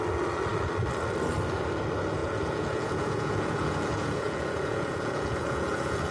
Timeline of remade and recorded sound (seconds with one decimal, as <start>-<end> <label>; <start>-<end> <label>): 0.0-2.2 recorded; 2.2-6.1 remade